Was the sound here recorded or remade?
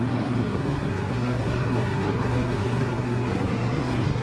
remade